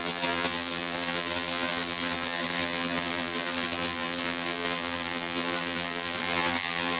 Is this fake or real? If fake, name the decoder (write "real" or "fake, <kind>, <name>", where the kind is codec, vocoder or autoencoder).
fake, vocoder, BigVGAN v2